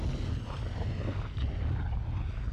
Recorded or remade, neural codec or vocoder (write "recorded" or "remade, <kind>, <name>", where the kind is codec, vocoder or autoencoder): recorded